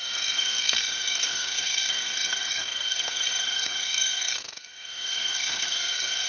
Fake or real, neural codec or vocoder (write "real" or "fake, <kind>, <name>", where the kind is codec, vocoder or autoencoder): fake, codec, SNAC